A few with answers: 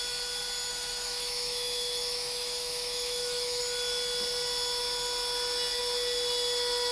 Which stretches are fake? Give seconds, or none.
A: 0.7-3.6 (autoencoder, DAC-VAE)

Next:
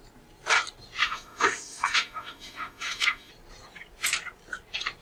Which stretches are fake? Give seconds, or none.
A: 1.0-3.3 (autoencoder, DAC-VAE)

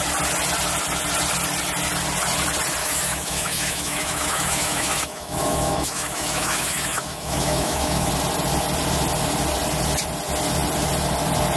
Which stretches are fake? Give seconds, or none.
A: 2.8-8.1 (autoencoder, DAC-VAE)

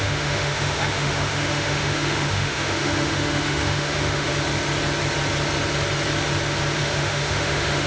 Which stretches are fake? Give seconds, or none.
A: 0.0-4.3 (autoencoder, DAC-VAE); 6.8-7.9

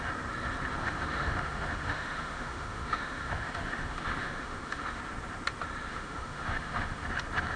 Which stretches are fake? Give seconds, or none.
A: 0.8-5.0 (autoencoder, DAC-VAE); 5.9-7.0

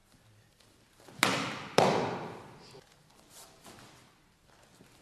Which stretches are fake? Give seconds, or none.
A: none

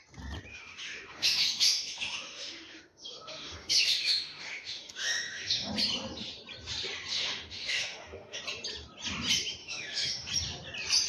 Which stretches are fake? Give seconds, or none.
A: 0.5-5.7 (autoencoder, DAC-VAE); 7.1-8.4; 9.6-10.3